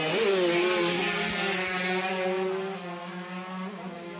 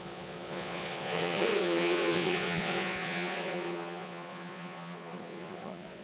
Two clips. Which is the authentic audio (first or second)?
first